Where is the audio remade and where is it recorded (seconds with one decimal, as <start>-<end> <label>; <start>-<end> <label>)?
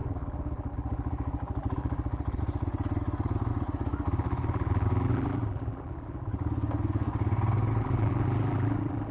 0.0-2.4 remade; 2.4-3.9 recorded; 3.9-6.5 remade; 6.5-7.8 recorded; 7.8-9.1 remade